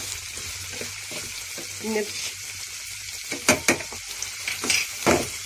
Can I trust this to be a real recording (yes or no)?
yes